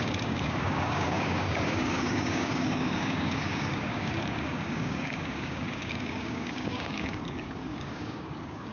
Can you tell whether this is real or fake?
fake